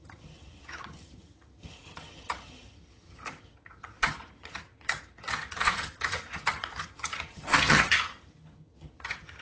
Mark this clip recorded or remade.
remade